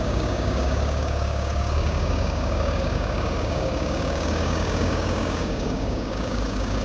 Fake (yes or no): yes